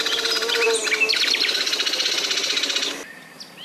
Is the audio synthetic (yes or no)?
no